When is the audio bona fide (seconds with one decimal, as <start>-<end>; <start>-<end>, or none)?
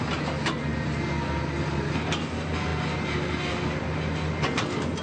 0.0-5.0